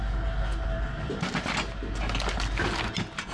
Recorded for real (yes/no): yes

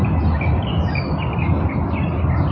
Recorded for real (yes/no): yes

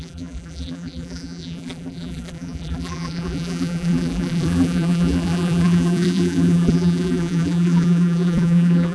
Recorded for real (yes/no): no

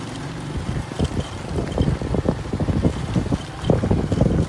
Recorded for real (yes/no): yes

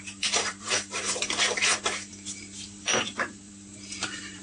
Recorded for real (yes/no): no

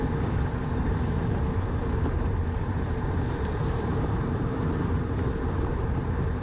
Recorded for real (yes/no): no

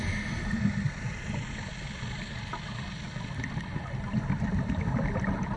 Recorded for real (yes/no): yes